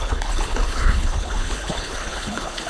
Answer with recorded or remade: remade